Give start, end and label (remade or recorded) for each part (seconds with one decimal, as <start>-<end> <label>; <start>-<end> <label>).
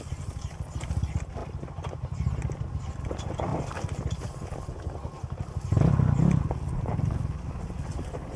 0.0-3.5 recorded; 3.5-4.3 remade; 4.3-8.4 recorded